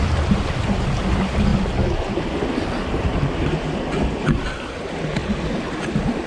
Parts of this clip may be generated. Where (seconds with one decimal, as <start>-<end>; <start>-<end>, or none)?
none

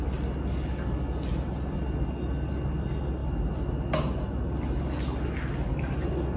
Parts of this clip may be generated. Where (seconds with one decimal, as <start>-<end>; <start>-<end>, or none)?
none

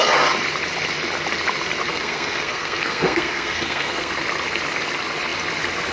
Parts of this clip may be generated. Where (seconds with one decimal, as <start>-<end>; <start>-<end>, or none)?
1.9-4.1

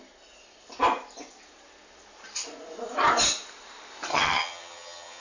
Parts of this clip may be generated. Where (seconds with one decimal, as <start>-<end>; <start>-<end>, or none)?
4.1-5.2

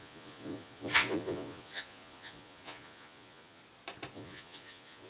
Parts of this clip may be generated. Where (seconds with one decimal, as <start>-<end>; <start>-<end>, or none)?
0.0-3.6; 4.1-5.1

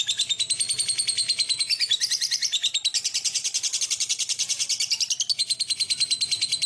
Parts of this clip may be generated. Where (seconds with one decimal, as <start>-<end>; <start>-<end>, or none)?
none